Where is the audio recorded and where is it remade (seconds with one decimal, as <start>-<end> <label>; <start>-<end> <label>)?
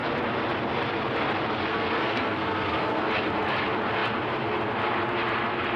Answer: 0.0-1.7 recorded; 1.7-3.0 remade; 3.0-5.8 recorded